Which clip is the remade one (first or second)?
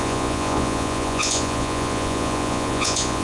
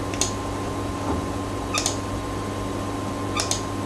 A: first